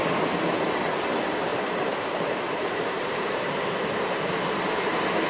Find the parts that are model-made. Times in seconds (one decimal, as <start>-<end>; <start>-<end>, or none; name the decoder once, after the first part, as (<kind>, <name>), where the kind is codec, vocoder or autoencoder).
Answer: 1.5-3.6 (vocoder, BigVGAN v2)